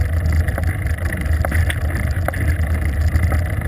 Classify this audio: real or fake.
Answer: real